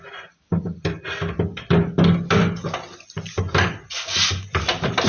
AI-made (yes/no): no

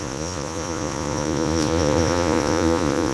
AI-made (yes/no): yes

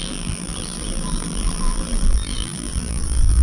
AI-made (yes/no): yes